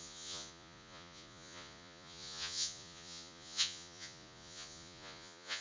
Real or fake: fake